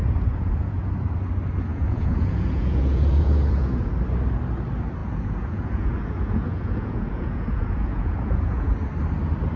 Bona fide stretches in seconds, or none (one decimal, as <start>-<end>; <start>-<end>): 0.9-1.7; 3.9-5.0; 8.7-9.6